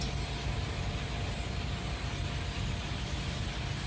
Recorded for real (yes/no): yes